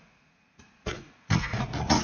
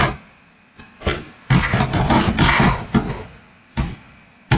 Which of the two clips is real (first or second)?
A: second